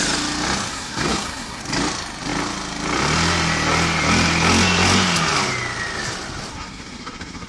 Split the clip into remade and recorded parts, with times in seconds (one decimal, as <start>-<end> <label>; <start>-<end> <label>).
0.0-0.7 recorded; 0.7-1.6 remade; 1.6-6.5 recorded; 6.5-7.5 remade